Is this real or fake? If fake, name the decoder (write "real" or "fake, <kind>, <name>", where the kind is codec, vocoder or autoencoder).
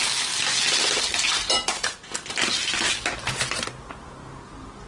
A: real